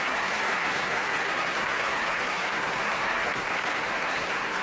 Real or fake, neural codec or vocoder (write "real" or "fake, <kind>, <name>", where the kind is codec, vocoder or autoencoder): fake, codec, SNAC